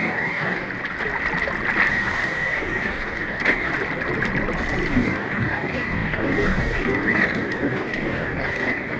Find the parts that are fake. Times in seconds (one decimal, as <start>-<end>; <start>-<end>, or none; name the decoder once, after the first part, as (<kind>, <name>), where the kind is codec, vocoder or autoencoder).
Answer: 0.0-0.7 (codec, DAC); 1.9-3.7; 4.9-9.0